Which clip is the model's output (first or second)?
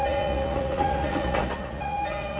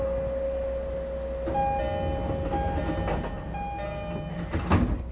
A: first